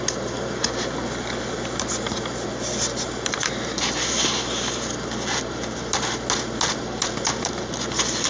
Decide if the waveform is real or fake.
real